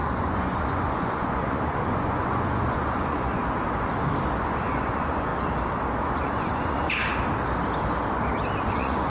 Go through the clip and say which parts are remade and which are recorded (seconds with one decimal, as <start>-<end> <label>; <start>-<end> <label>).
0.0-3.4 remade; 3.4-4.4 recorded; 4.4-5.3 remade; 5.3-6.0 recorded; 6.0-7.0 remade; 7.0-8.6 recorded; 8.6-9.1 remade